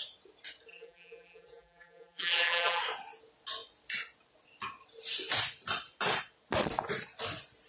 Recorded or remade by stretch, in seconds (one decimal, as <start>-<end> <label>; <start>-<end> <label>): 0.0-0.7 recorded; 0.7-2.8 remade; 2.8-7.7 recorded